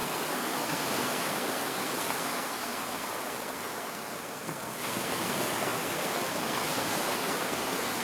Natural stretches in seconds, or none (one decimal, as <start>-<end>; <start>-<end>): none